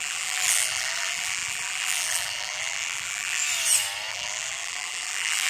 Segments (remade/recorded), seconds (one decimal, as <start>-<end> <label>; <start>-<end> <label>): 0.0-3.4 remade; 3.4-4.1 recorded; 4.1-5.5 remade